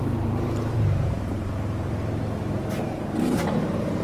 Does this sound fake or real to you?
fake